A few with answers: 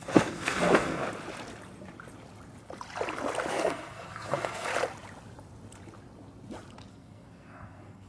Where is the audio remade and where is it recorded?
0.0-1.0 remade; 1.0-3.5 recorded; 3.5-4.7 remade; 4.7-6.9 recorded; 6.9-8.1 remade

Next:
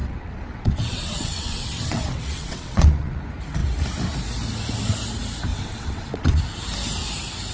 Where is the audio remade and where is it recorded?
0.0-3.2 remade; 3.2-5.5 recorded; 5.5-6.4 remade; 6.4-7.5 recorded

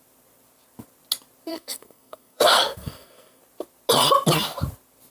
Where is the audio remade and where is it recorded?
0.0-1.5 recorded; 1.5-3.4 remade; 3.4-5.1 recorded

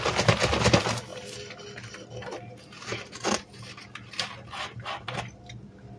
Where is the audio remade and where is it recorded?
0.0-6.0 recorded

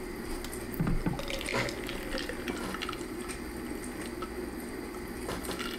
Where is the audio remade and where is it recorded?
0.0-1.5 remade; 1.5-5.0 recorded; 5.0-5.8 remade